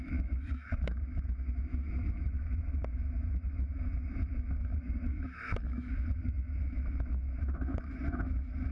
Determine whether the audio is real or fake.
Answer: fake